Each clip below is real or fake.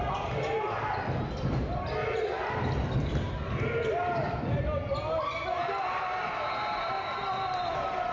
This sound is real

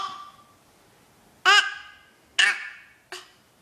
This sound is real